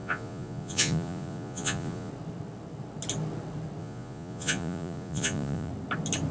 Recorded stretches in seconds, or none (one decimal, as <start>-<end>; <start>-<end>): 2.1-3.8; 5.7-6.3